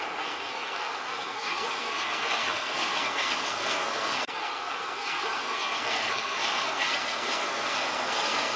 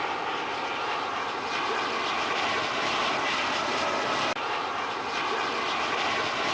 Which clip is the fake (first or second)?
first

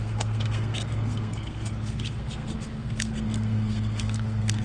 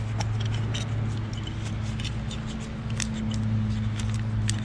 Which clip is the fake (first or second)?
first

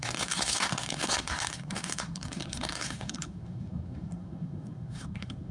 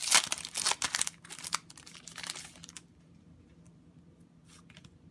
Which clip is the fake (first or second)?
first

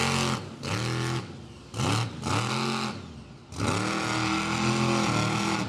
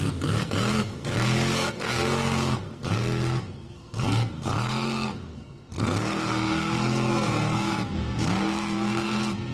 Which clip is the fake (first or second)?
second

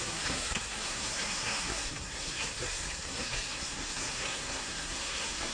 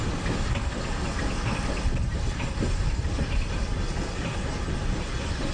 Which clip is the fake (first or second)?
first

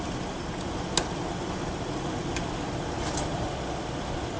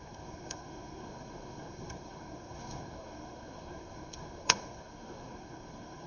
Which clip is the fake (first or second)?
second